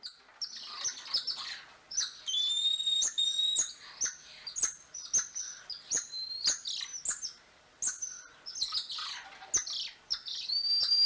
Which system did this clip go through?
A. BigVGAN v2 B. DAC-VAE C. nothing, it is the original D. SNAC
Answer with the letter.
C